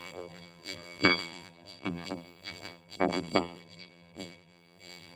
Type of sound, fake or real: fake